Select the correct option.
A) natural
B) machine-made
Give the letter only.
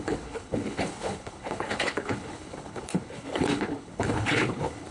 B